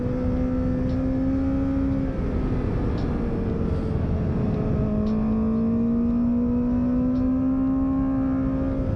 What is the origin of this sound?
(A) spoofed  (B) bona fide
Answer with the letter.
B